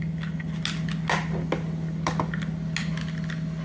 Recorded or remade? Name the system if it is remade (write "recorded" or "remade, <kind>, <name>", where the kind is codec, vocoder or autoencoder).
recorded